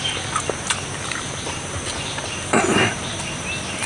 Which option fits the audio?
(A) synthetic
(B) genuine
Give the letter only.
B